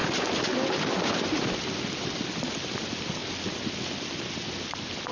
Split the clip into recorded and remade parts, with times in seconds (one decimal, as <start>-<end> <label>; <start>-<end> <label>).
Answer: 0.0-5.1 recorded